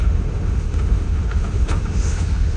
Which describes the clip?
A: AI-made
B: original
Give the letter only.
A